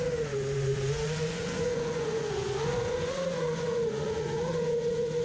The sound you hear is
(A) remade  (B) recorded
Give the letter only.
A